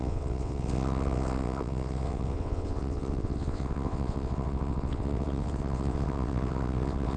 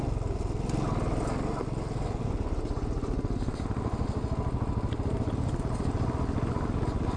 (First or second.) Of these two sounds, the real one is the second